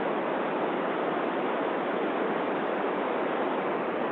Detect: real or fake real